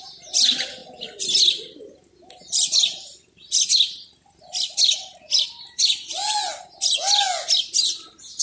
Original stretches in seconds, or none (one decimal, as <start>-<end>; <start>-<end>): 0.0-8.4